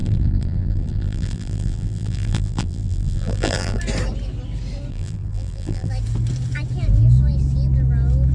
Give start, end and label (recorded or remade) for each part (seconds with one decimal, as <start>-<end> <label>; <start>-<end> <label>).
0.0-3.8 remade; 3.8-4.9 recorded; 4.9-5.9 remade; 5.9-8.3 recorded